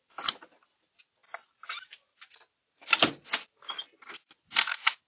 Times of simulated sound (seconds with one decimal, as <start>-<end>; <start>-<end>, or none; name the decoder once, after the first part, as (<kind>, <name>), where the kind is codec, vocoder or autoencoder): none